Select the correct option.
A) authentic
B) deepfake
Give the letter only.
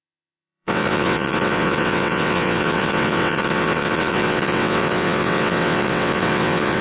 B